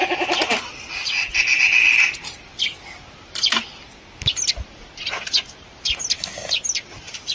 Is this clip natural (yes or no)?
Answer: yes